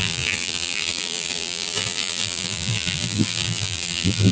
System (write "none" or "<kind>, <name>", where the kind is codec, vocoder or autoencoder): vocoder, BigVGAN v2